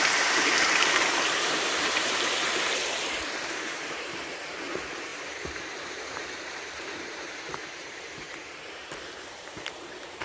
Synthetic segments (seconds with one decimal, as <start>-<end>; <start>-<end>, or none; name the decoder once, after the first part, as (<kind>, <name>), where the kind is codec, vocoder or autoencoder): 0.0-10.2 (vocoder, BigVGAN v2)